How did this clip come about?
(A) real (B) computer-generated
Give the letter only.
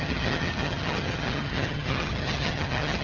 B